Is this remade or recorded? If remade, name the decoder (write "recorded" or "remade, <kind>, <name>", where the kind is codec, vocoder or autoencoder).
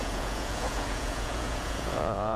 remade, vocoder, Vocos